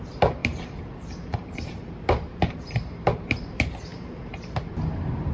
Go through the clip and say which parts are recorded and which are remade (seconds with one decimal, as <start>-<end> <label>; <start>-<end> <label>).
0.0-5.3 remade